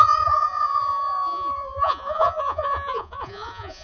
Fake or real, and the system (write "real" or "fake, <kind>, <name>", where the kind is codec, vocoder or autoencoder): fake, vocoder, Vocos